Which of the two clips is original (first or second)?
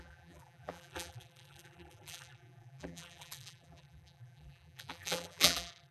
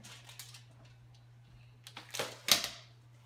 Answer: second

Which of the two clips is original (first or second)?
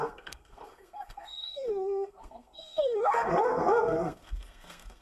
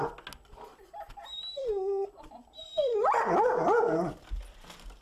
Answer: second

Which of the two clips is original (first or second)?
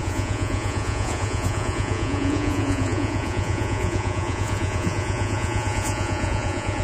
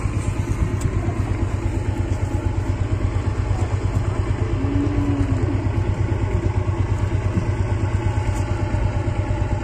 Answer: second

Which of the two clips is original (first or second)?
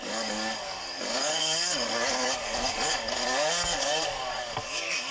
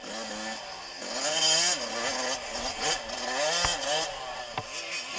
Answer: second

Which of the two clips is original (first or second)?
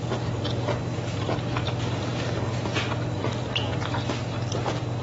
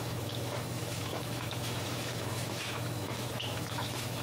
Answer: first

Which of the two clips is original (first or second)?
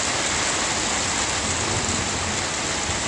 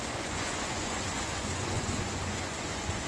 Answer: first